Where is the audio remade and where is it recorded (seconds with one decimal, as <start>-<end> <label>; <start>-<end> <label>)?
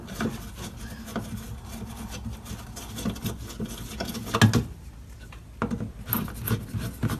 0.0-7.2 recorded